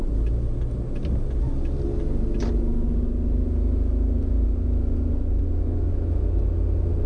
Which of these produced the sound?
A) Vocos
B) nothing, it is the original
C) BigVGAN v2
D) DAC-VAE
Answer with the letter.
B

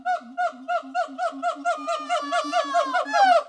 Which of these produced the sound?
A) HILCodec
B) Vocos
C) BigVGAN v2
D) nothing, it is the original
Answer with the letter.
D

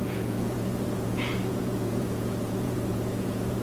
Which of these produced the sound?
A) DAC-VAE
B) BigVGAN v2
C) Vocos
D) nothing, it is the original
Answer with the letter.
C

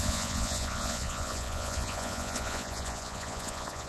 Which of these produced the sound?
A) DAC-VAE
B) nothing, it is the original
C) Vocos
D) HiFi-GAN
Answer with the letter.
C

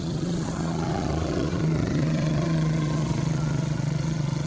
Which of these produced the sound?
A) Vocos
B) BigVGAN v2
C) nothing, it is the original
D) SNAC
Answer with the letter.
A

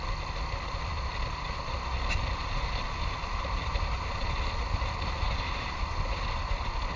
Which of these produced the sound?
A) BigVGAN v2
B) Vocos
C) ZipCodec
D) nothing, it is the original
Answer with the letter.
D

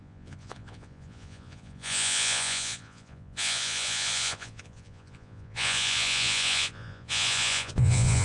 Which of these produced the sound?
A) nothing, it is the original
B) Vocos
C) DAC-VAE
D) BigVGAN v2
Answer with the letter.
B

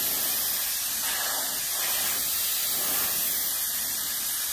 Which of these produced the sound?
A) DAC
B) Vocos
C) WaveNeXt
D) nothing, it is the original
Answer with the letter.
D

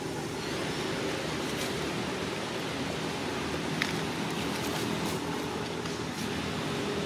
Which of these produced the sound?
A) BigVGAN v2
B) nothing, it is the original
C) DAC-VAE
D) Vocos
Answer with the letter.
B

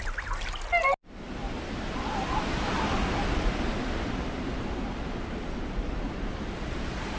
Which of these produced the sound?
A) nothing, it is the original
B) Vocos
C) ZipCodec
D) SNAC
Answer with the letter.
A